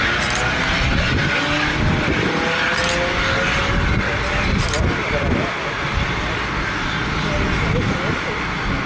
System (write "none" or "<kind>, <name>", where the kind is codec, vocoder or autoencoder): none